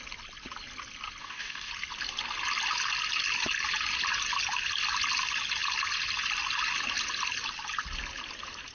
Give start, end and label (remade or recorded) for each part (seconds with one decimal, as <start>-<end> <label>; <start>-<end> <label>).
0.0-1.2 recorded; 1.2-1.7 remade; 1.7-8.7 recorded